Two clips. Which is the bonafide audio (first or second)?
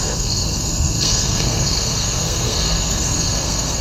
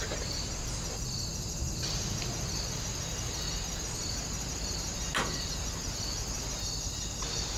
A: second